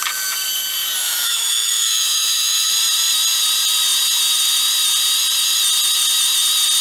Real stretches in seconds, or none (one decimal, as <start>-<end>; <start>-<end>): 0.0-1.0; 2.7-6.8